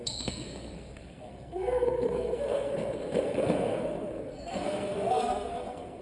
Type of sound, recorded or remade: remade